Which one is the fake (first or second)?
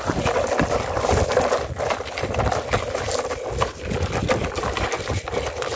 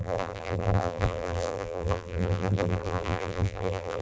second